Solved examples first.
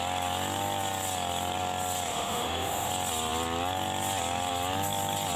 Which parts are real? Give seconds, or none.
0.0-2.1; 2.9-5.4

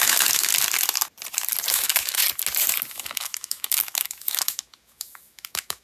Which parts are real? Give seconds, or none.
0.5-1.7; 2.2-2.9

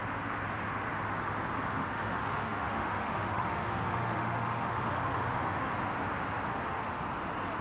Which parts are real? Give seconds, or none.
0.0-1.8; 5.7-6.5; 7.0-7.6

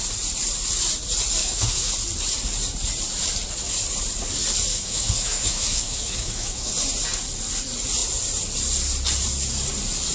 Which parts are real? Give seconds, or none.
0.0-1.4; 1.9-4.7; 6.7-10.1

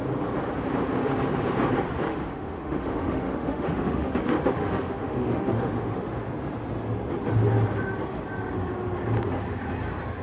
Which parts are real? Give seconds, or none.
0.0-2.1; 6.3-10.2

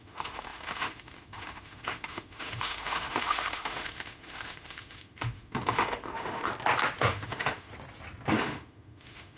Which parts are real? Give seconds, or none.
6.5-7.0; 7.7-8.3